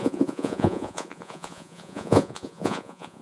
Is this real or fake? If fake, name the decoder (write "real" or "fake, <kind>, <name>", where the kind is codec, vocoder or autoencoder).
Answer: fake, vocoder, Vocos